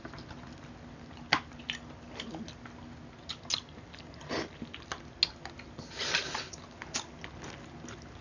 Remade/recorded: recorded